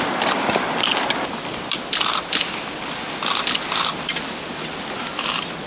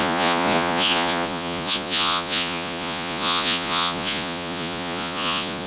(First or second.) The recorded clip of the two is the first